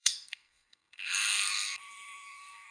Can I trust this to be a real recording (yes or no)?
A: no